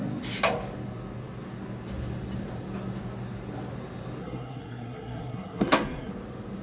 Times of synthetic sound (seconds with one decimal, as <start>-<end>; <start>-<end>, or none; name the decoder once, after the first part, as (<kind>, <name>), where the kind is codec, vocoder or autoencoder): 4.2-6.1 (codec, SNAC)

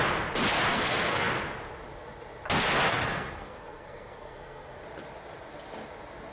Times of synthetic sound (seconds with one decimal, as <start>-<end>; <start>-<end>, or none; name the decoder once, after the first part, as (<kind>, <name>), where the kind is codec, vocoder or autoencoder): 0.7-1.3 (codec, SNAC); 2.9-4.8

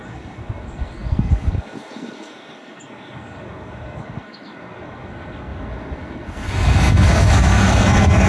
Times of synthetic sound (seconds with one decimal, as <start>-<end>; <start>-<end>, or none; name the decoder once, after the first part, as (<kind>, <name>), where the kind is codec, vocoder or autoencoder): 0.0-8.3 (codec, SNAC)

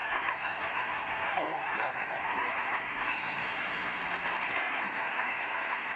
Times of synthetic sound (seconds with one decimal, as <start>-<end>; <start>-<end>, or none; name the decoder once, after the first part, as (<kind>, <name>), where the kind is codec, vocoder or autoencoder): 0.0-4.0 (codec, SNAC); 4.5-6.0

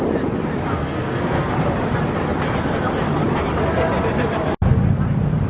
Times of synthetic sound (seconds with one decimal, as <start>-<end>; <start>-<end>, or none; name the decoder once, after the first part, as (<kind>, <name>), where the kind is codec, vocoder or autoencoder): 0.7-1.5 (codec, SNAC)